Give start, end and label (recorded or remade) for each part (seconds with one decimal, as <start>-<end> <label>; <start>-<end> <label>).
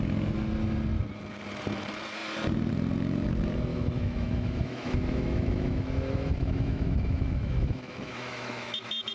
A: 0.0-3.7 recorded; 3.7-9.1 remade